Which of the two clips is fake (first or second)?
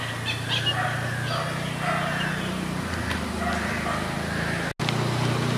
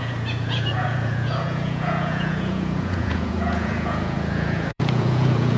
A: second